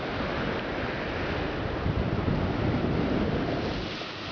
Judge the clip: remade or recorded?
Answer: recorded